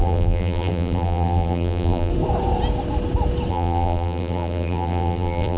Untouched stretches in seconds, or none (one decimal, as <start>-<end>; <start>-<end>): 2.1-3.5